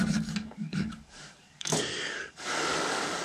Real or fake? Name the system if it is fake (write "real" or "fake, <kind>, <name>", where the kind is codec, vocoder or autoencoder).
fake, codec, DAC